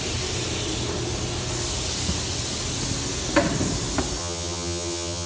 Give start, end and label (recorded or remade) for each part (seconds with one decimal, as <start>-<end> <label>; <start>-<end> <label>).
0.0-4.2 recorded; 4.2-5.3 remade